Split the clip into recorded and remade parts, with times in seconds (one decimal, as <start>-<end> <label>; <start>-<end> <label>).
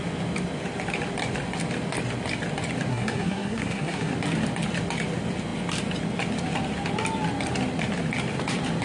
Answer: 0.0-2.9 recorded; 2.9-4.1 remade; 4.1-8.8 recorded